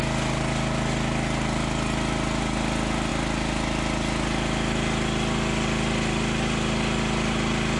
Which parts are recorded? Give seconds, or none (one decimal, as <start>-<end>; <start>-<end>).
0.0-7.8